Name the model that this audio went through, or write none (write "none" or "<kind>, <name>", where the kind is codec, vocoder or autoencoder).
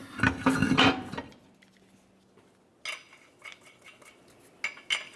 none